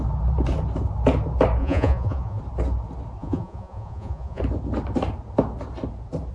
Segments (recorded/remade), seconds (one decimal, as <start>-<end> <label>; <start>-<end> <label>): 0.0-1.6 recorded; 1.6-2.4 remade; 2.4-3.2 recorded; 3.2-4.4 remade; 4.4-6.3 recorded